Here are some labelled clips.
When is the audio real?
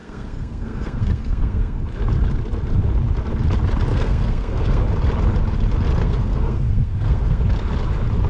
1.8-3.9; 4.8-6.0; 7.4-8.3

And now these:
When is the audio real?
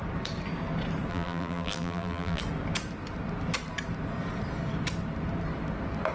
0.0-1.1; 2.4-6.1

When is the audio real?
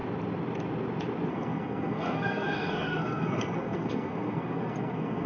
0.0-1.3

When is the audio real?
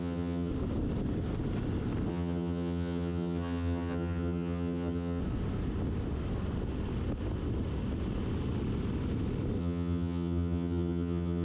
0.5-2.1; 5.2-9.6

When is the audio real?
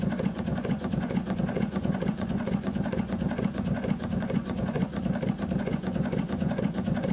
4.9-5.6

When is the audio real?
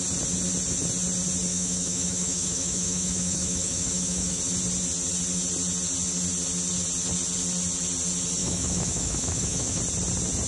0.0-1.5; 4.4-8.4; 9.8-10.5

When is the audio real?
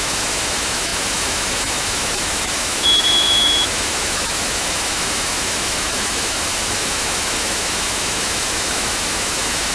none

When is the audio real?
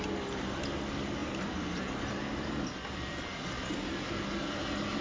0.0-1.2; 1.8-5.0